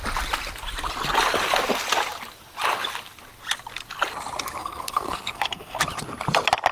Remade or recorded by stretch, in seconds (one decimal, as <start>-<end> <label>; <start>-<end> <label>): 0.0-4.6 recorded; 4.6-5.8 remade; 5.8-6.7 recorded